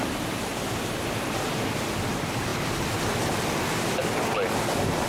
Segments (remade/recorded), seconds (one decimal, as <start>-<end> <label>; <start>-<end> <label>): 0.0-5.1 recorded